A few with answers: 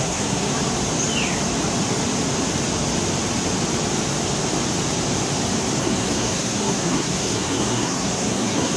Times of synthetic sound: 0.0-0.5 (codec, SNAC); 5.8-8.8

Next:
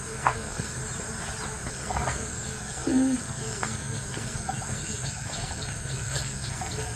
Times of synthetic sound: 0.0-0.8 (codec, SNAC); 1.7-7.0

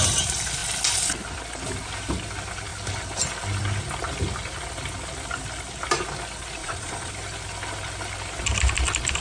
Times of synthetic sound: 6.6-7.1 (vocoder, Vocos)

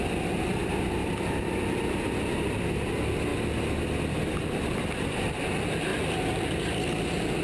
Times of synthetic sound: 5.9-6.8 (vocoder, BigVGAN v2)

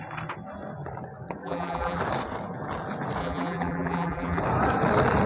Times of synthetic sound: 1.4-2.0 (vocoder, BigVGAN v2); 3.2-4.4

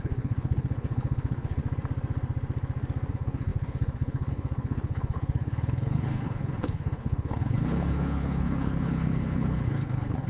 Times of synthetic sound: 0.0-1.6 (codec, HILCodec); 3.1-10.3

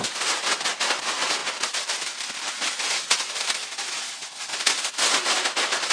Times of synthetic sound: none

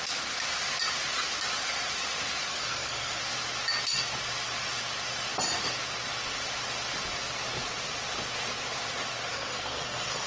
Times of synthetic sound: 2.5-3.2 (codec, SNAC); 9.3-10.3